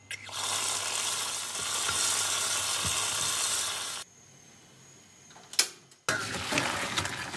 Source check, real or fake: real